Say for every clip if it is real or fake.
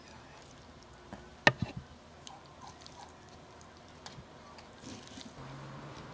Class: real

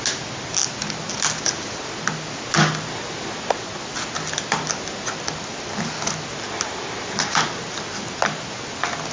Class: real